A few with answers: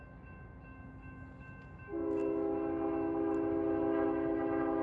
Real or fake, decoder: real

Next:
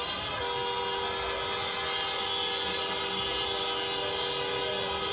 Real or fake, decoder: real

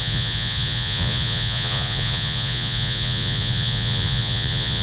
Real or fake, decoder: fake, vocoder, Vocos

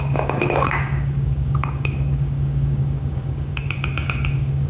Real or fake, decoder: fake, codec, DAC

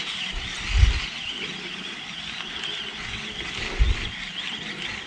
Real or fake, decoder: real